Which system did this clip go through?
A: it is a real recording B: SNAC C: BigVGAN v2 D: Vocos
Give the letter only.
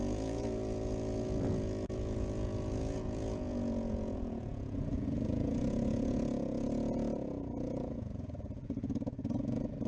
D